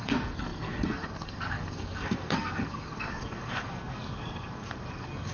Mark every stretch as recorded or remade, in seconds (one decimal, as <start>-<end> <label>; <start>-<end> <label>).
0.0-5.3 remade